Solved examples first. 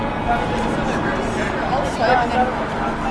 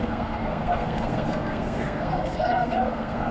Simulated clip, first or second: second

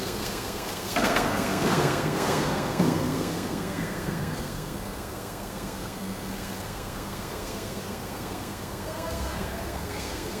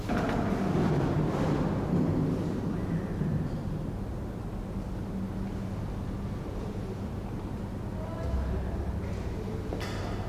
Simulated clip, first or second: first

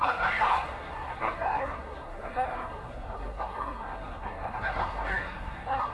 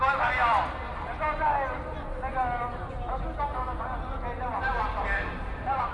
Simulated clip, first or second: first